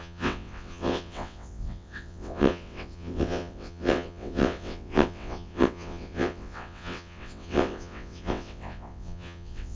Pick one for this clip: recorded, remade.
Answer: remade